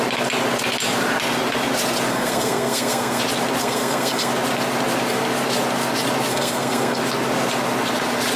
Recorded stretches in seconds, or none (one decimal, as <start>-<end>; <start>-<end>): 0.0-2.1; 3.2-3.6; 4.3-6.3; 7.0-8.4